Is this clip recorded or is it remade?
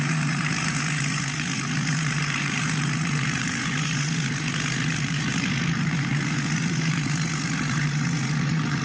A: remade